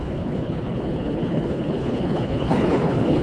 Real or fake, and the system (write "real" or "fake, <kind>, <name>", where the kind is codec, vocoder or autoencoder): fake, codec, HILCodec